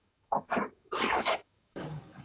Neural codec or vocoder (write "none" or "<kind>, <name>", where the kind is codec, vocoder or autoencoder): codec, DAC